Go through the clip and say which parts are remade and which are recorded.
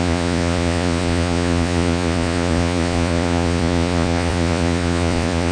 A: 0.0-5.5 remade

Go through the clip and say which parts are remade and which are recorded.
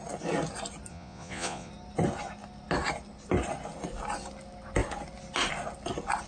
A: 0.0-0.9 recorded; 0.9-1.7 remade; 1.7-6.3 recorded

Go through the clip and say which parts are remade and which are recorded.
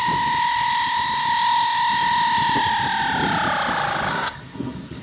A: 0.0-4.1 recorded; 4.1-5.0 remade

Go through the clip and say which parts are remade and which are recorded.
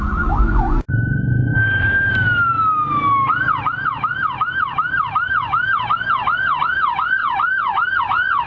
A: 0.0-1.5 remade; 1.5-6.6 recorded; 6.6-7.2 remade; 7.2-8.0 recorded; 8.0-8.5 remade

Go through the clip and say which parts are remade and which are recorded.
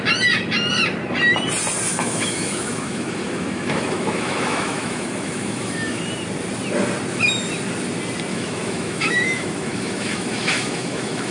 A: 0.0-1.9 recorded; 1.9-6.0 remade; 6.0-8.3 recorded; 8.3-11.3 remade